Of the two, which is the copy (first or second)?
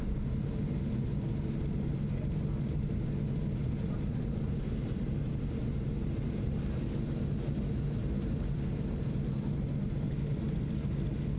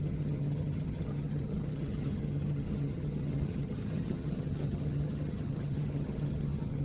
second